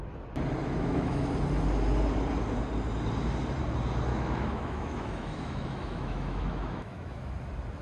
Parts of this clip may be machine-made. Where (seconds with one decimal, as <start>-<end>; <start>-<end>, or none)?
0.6-1.3; 4.1-7.3